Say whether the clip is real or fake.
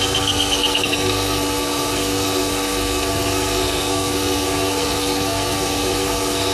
fake